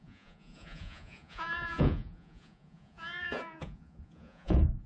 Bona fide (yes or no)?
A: no